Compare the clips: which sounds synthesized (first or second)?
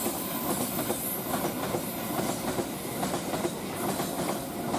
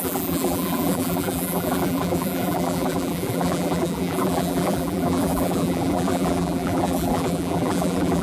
second